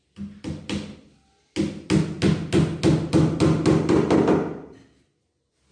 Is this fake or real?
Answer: real